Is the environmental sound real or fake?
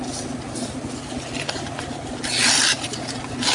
real